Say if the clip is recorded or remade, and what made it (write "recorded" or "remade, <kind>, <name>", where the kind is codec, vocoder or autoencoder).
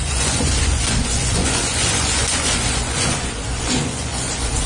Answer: remade, vocoder, Vocos